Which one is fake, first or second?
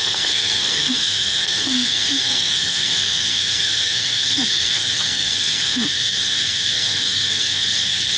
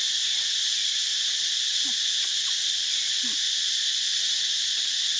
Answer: first